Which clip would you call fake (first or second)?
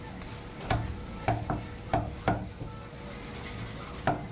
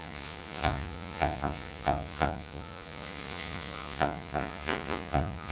second